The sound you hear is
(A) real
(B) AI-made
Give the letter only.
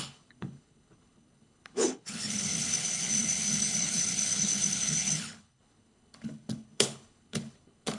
B